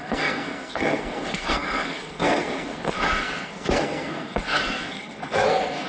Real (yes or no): no